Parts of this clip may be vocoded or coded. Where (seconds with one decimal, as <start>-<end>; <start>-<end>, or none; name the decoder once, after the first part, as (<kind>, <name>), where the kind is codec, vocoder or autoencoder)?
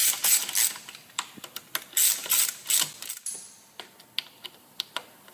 2.2-3.5 (vocoder, BigVGAN v2)